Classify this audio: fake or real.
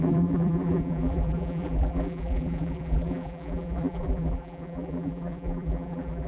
fake